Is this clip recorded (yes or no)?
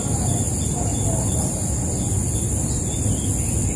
yes